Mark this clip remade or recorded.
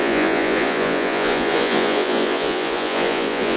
remade